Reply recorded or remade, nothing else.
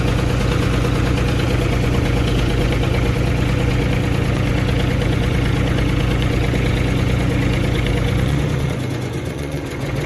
remade